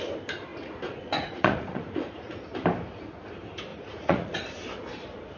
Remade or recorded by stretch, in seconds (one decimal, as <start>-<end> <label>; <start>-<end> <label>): 0.0-0.5 recorded; 0.5-2.4 remade; 2.4-3.7 recorded; 3.7-4.4 remade; 4.4-5.4 recorded

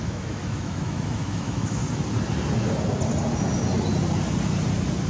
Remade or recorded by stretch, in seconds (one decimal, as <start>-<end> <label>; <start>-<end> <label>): 0.0-1.8 remade; 1.8-5.1 recorded

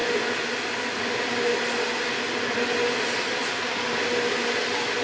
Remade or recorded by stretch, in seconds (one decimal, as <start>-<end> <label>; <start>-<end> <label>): 0.0-5.0 recorded

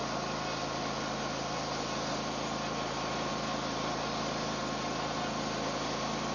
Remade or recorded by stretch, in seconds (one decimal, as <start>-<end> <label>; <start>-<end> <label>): 0.0-6.3 recorded

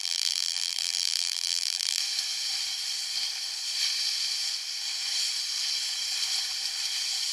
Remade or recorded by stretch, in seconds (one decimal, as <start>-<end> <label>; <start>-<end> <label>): 0.0-2.0 remade; 2.0-7.3 recorded

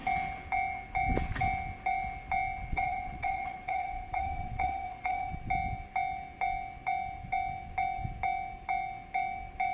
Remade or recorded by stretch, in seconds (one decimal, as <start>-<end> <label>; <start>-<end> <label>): 0.0-2.7 recorded; 2.7-5.3 remade; 5.3-9.7 recorded